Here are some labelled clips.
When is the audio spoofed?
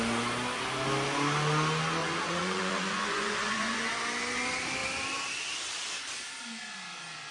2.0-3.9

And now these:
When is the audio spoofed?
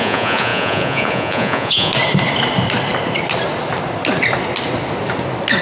0.0-1.9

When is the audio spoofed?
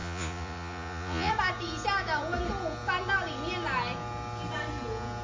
0.0-1.3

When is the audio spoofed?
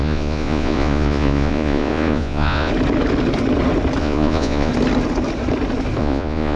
0.0-2.7; 4.0-4.7; 6.0-6.6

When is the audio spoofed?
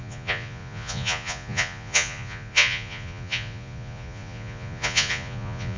0.0-5.8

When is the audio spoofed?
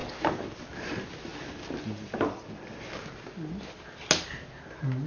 none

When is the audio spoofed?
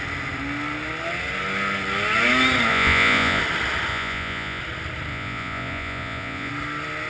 2.7-3.4; 3.9-4.6; 5.1-6.5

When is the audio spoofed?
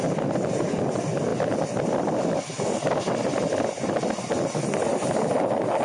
none